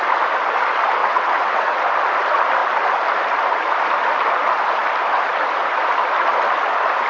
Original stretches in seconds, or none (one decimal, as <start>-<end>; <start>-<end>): 0.0-1.0; 1.8-7.1